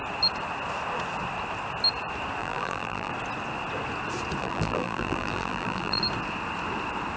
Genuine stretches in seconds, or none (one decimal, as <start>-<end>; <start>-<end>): 0.0-2.4; 3.1-4.4; 6.0-7.2